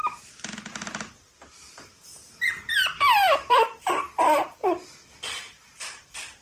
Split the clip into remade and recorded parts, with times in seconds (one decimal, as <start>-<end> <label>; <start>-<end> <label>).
0.0-1.7 recorded; 1.7-2.1 remade; 2.1-3.5 recorded; 3.5-6.4 remade